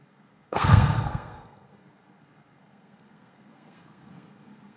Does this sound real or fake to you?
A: fake